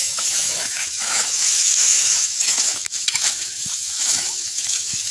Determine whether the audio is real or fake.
fake